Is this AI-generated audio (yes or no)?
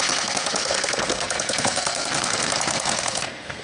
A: yes